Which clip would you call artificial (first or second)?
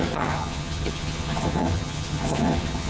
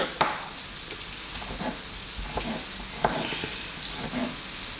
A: first